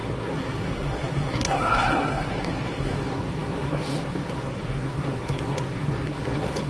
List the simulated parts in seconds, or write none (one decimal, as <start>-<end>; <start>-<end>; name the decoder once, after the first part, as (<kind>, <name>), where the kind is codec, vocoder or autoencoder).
0.0-6.7 (codec, SNAC)